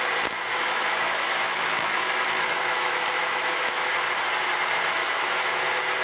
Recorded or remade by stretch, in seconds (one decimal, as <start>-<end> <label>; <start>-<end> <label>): 0.0-0.5 recorded; 0.5-3.9 remade; 3.9-5.0 recorded; 5.0-5.6 remade; 5.6-6.0 recorded